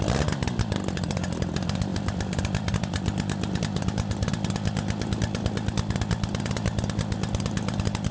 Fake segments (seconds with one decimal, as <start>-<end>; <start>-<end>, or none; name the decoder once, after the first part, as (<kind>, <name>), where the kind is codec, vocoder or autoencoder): 1.9-3.6 (vocoder, BigVGAN v2)